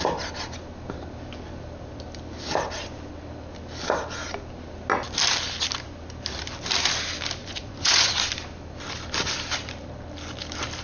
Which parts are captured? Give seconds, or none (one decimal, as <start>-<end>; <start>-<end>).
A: 0.0-7.4; 8.1-10.8